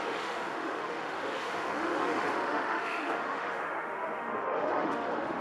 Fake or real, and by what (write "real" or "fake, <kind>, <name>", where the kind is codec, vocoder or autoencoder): fake, autoencoder, DAC-VAE